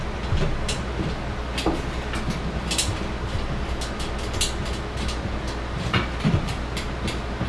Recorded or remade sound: recorded